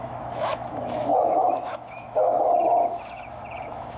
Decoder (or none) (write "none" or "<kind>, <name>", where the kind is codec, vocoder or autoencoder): autoencoder, DAC-VAE